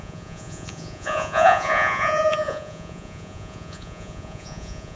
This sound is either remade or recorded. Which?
remade